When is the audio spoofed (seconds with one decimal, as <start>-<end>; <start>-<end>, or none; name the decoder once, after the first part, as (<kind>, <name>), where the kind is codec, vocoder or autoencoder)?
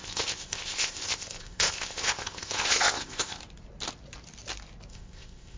0.0-3.4 (codec, ZipCodec); 4.9-5.6